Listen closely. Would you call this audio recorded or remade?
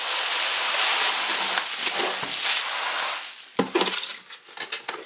recorded